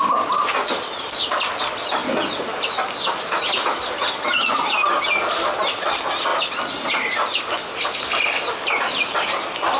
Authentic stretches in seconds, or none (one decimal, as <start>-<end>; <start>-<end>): 0.0-9.8